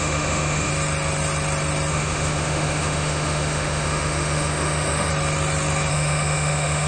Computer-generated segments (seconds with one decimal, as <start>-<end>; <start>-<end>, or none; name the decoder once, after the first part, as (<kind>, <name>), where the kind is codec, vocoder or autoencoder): 0.0-0.7 (autoencoder, DAC-VAE); 1.9-5.1; 5.9-6.9